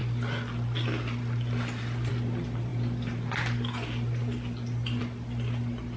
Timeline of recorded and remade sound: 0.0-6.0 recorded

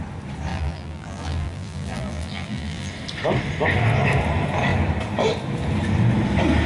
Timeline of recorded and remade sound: 0.0-0.5 recorded; 0.5-2.9 remade; 2.9-6.7 recorded

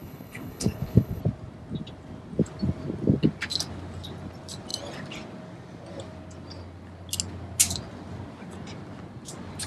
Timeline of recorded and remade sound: 0.0-1.2 remade; 1.2-9.7 recorded

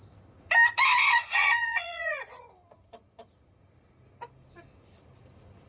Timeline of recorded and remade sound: 0.0-0.9 recorded; 0.9-2.4 remade; 2.4-5.7 recorded